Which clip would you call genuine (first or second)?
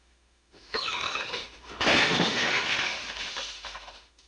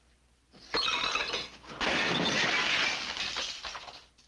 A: second